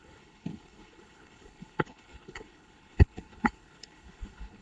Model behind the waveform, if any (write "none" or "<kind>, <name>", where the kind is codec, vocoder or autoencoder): codec, HILCodec